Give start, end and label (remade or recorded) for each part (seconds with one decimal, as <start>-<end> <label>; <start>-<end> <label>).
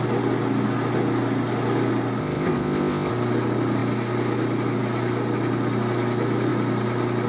0.0-2.2 recorded; 2.2-3.1 remade; 3.1-7.3 recorded